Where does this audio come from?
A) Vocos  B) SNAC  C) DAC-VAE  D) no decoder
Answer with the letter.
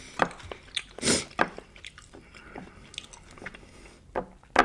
D